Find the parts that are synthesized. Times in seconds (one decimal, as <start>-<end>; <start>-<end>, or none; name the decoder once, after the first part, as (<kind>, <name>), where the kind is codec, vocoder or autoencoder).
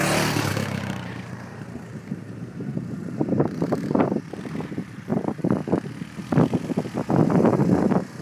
0.5-4.4 (vocoder, BigVGAN v2)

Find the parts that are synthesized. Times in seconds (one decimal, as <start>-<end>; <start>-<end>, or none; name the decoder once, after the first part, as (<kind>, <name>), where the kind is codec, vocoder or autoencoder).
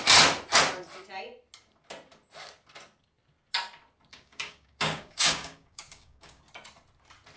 4.1-6.4 (codec, DAC)